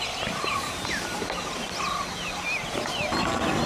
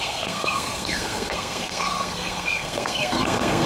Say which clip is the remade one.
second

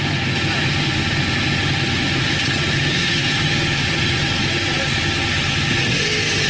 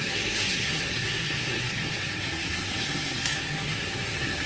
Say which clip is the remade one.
second